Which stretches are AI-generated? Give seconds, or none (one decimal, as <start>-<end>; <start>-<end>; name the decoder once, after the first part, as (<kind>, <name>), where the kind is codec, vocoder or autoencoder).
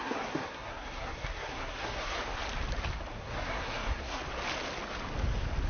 0.0-2.2 (codec, SNAC); 3.1-4.2